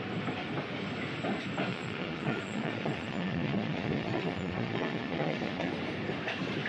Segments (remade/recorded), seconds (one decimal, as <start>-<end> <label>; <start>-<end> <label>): 0.0-1.7 recorded; 1.7-5.7 remade; 5.7-6.7 recorded